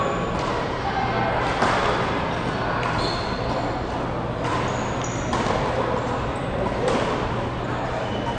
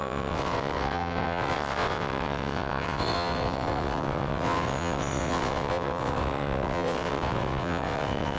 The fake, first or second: second